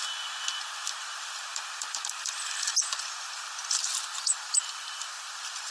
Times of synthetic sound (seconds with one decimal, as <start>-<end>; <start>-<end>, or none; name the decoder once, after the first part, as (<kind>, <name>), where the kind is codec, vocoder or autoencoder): 0.7-5.7 (vocoder, BigVGAN v2)